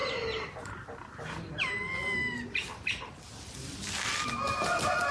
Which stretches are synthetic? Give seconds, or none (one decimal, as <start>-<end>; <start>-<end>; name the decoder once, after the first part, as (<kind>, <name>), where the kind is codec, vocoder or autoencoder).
none